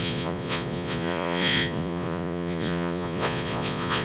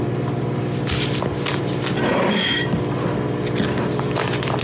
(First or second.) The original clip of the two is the second